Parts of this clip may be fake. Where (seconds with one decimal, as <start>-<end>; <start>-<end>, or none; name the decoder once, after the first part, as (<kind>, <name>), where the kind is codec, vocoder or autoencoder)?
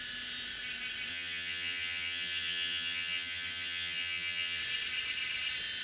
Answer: 1.1-4.6 (vocoder, HiFi-GAN)